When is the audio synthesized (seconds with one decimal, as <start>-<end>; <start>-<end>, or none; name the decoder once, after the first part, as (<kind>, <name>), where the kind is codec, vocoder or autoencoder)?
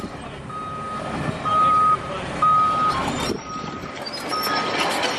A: none